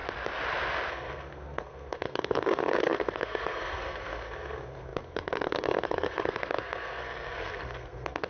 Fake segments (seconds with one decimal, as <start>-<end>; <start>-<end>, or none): 0.9-8.3